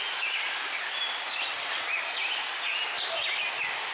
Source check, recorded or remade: recorded